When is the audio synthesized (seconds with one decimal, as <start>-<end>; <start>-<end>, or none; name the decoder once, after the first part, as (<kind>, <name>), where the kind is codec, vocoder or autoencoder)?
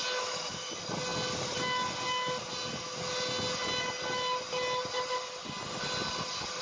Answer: 0.0-0.7 (autoencoder, DAC-VAE)